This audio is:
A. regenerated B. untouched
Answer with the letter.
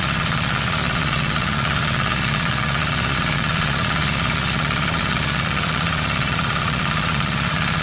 A